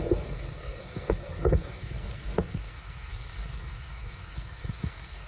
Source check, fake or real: fake